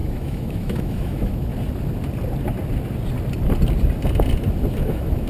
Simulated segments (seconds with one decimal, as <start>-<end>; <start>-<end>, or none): 0.0-1.5; 4.7-5.3